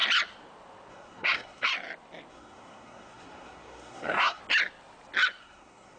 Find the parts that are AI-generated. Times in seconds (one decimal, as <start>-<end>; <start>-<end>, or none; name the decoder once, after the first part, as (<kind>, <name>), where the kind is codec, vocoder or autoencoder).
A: 0.9-1.7 (codec, SNAC); 2.3-4.4; 5.4-6.0